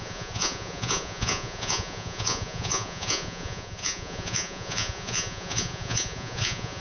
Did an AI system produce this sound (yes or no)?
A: yes